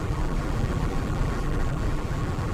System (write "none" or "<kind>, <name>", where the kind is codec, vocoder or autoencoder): vocoder, BigVGAN v2